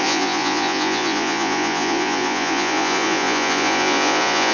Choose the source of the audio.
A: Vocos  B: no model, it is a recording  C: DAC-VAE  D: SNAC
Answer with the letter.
A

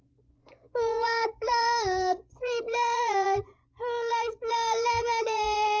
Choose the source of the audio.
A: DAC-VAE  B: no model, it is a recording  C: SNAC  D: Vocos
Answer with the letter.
D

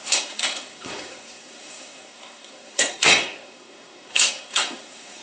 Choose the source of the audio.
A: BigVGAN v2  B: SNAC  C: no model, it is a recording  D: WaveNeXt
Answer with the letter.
B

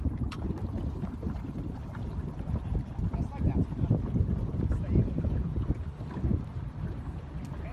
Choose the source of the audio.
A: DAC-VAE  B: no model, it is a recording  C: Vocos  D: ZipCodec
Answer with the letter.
B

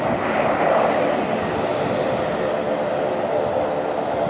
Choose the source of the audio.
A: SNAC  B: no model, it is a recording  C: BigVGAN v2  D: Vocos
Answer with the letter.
B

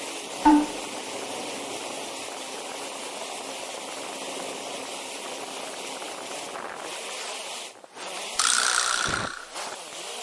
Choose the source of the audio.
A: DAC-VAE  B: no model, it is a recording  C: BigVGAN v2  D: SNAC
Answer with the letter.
B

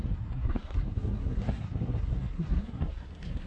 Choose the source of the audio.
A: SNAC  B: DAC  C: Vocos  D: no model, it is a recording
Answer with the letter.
A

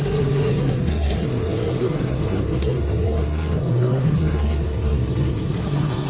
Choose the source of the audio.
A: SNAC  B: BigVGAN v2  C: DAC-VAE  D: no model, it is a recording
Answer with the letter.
A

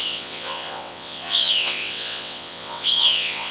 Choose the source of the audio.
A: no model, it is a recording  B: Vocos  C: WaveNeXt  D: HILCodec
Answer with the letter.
C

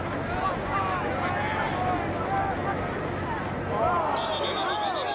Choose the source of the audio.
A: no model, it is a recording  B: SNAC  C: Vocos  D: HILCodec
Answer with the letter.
A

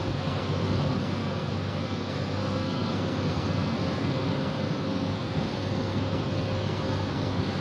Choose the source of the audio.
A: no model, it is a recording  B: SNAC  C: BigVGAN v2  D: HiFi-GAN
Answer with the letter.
B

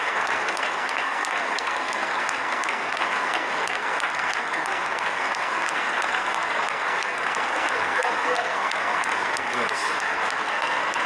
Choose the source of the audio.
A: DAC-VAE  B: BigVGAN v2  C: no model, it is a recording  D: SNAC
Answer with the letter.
D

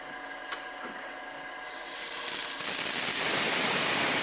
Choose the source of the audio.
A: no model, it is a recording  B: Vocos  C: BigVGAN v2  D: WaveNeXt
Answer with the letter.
A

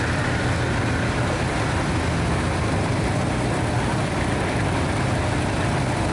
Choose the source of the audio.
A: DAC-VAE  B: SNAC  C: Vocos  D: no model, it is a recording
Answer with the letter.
D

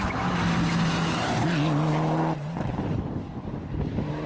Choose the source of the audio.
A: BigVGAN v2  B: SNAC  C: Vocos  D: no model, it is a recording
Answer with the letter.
D